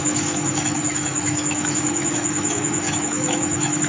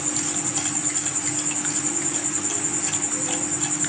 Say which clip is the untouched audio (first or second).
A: second